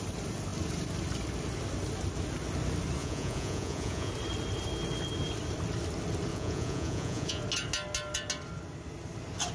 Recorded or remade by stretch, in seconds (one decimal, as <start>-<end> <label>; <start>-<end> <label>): 0.0-3.0 recorded; 3.0-4.1 remade; 4.1-6.3 recorded; 6.3-7.4 remade; 7.4-9.5 recorded